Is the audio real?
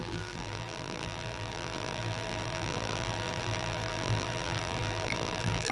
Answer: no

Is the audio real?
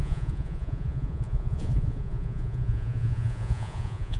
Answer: no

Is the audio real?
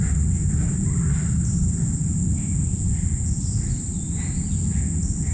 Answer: yes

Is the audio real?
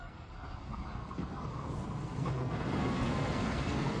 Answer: no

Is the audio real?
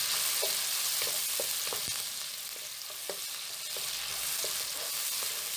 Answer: yes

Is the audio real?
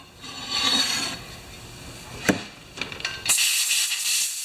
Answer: yes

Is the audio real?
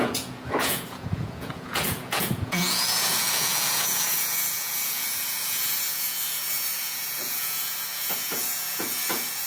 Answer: no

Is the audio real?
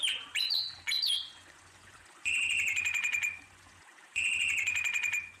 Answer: no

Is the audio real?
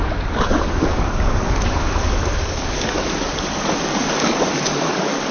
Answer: no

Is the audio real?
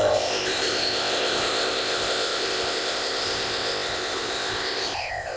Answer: no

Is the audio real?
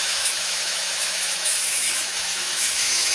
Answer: no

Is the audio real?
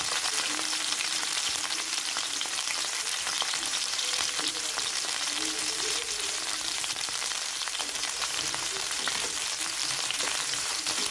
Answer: no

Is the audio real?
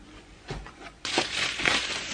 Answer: no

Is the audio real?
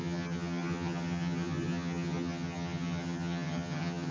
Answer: no